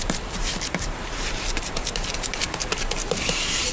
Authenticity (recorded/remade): remade